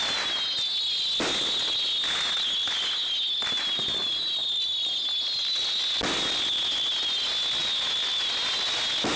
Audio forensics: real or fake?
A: real